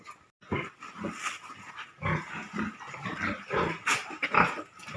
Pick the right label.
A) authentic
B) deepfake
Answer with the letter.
A